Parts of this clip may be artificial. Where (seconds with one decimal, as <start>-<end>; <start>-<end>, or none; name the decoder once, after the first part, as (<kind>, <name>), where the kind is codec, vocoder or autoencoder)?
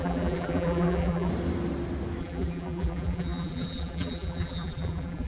0.0-1.3 (vocoder, BigVGAN v2); 2.2-5.3